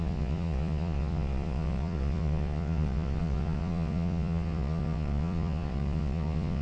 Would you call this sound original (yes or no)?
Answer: no